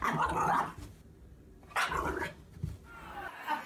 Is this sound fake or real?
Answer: real